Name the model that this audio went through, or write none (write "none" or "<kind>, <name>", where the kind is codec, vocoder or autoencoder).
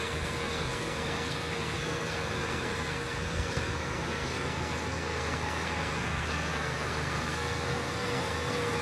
codec, SNAC